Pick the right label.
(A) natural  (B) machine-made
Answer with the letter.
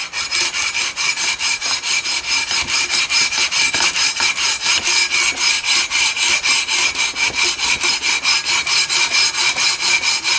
A